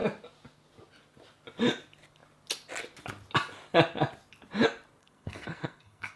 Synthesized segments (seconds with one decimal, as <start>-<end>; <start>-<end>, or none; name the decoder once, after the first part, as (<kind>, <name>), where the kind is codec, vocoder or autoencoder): 5.0-6.2 (codec, SNAC)